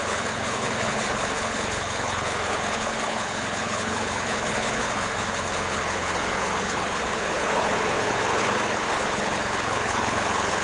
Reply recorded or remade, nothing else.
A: remade